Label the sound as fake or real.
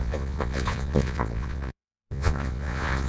fake